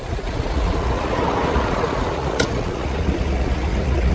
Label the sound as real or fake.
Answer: fake